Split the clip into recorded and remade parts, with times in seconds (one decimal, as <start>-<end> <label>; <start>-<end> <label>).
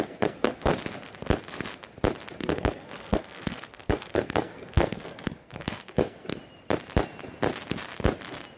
0.0-0.7 remade; 0.7-2.4 recorded; 2.4-6.3 remade; 6.3-8.6 recorded